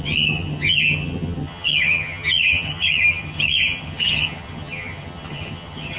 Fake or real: fake